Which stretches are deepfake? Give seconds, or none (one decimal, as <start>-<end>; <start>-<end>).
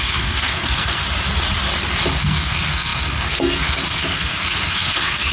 0.0-1.0; 2.2-5.3